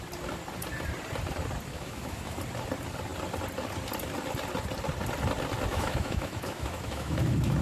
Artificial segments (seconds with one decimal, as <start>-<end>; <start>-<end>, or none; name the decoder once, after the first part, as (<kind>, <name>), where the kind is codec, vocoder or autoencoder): 1.7-2.4 (autoencoder, DAC-VAE); 5.7-7.6